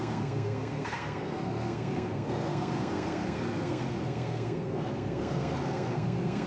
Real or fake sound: fake